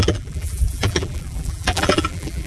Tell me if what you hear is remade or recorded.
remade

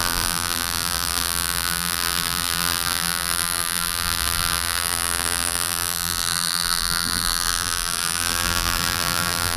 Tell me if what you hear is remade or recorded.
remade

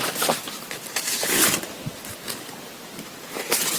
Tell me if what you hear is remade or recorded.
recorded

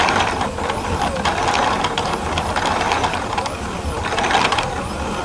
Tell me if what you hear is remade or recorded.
remade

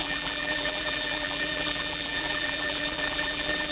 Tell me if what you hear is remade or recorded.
remade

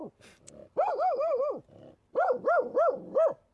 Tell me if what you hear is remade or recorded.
recorded